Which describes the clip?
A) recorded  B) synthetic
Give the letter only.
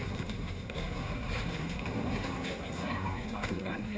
B